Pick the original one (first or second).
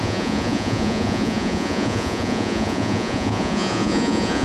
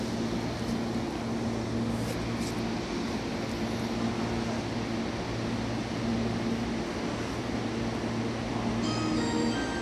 second